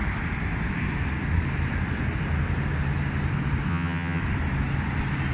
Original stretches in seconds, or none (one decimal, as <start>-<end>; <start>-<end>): 0.0-3.7; 4.2-5.3